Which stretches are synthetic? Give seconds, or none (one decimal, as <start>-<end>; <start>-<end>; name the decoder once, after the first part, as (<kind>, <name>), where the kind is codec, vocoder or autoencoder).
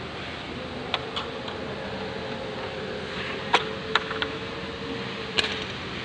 3.9-4.5 (autoencoder, DAC-VAE)